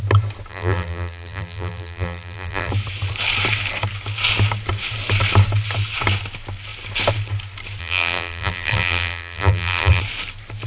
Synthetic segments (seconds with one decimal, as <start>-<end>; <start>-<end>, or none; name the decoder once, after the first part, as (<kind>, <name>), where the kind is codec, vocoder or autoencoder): 0.5-2.7 (vocoder, BigVGAN v2); 7.8-10.0